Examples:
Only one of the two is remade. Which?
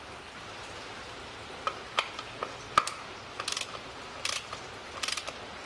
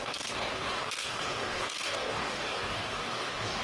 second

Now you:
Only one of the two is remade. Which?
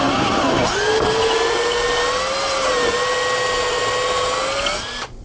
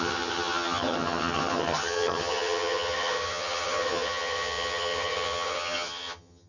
second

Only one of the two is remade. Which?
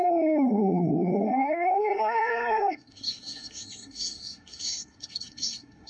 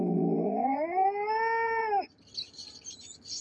first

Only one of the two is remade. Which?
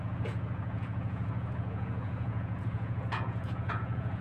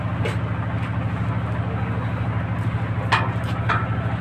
first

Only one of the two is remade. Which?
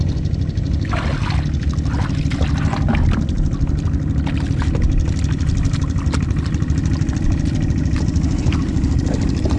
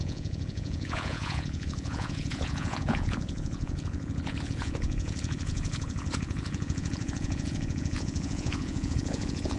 second